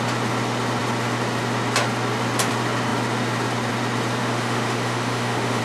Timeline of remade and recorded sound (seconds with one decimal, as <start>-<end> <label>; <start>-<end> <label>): 0.0-4.2 recorded; 4.2-5.6 remade